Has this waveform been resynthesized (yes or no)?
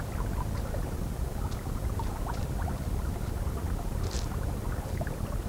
no